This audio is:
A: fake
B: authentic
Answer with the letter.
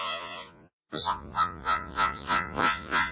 A